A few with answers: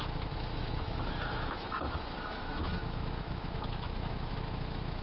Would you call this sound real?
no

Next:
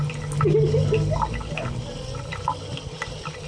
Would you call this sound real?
yes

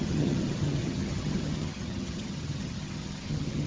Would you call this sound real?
no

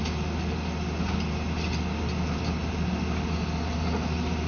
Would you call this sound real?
yes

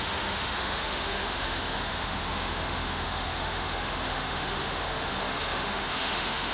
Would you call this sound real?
no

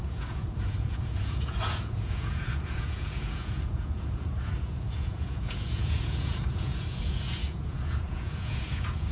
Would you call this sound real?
no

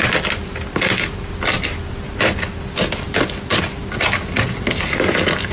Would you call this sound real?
yes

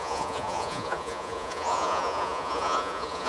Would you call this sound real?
no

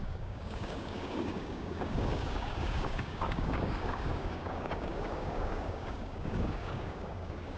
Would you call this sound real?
no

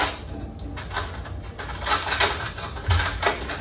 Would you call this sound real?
yes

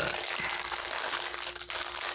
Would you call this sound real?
yes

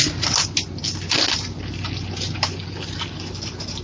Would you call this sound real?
yes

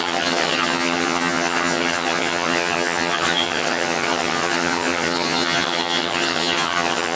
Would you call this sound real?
no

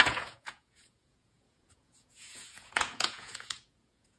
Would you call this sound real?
no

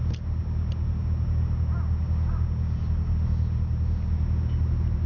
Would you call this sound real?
yes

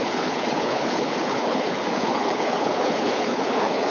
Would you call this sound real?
no